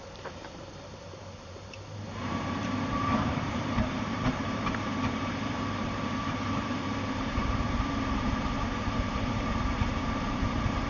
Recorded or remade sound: remade